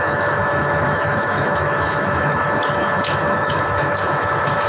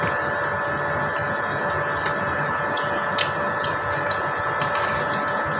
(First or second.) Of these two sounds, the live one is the second